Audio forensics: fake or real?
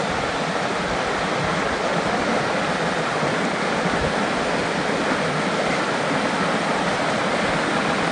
real